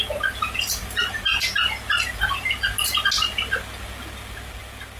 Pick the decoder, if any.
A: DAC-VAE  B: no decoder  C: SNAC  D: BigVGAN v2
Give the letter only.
B